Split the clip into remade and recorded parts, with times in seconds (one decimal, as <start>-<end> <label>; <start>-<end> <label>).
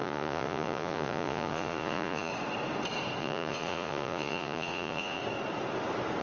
0.0-2.3 remade; 2.3-3.2 recorded; 3.2-5.2 remade; 5.2-6.2 recorded